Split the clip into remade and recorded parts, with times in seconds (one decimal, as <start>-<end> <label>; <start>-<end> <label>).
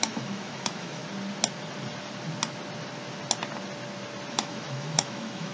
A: 0.0-1.0 remade; 1.0-4.3 recorded; 4.3-5.5 remade